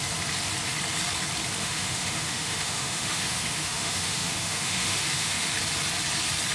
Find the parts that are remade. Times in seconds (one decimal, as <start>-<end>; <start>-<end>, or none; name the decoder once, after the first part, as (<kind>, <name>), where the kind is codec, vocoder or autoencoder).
1.6-5.5 (autoencoder, DAC-VAE)